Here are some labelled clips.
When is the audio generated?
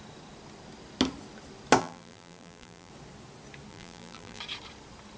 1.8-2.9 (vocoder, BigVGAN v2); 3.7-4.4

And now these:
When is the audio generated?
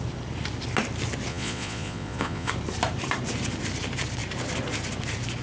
1.3-2.5 (vocoder, Vocos)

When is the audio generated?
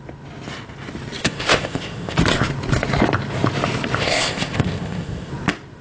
1.2-2.2 (codec, ZipCodec); 4.0-5.3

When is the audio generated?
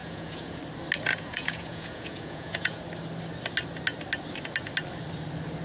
0.0-0.6 (vocoder, Vocos); 1.1-2.8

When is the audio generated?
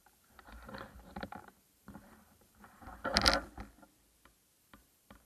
0.0-3.1 (vocoder, BigVGAN v2); 4.6-5.3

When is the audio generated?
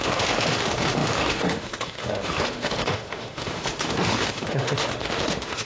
0.0-5.7 (autoencoder, DAC-VAE)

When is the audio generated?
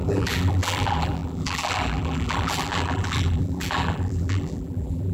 0.0-5.1 (vocoder, BigVGAN v2)